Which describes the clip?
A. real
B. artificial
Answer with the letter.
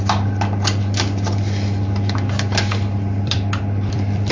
B